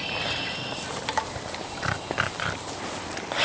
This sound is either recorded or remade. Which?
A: recorded